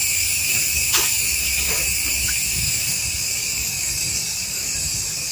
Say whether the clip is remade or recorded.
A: remade